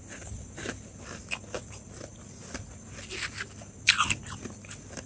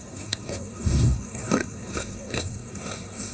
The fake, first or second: second